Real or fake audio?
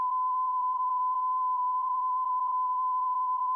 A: fake